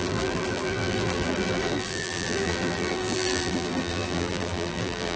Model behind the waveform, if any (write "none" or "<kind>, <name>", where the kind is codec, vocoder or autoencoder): vocoder, BigVGAN v2